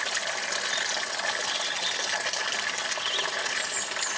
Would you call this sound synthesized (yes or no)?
no